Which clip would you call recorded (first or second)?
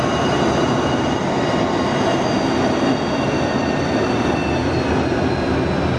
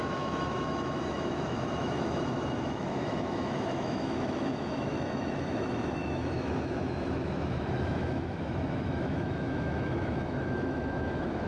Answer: first